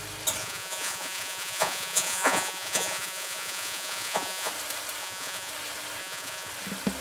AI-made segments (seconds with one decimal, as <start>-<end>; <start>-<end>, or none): 0.4-4.5; 5.0-5.5; 6.0-6.5

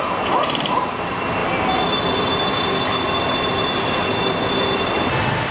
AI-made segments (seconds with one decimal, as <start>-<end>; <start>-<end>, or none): none